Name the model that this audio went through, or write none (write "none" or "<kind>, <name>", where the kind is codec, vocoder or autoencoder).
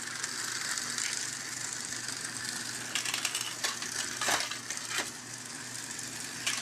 none